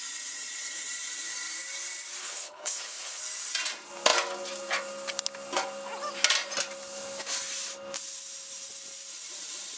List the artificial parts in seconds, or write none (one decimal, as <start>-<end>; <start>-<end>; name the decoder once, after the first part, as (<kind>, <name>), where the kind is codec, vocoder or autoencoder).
2.2-3.2 (codec, HILCodec)